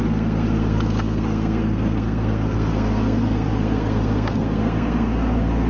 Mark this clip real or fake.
fake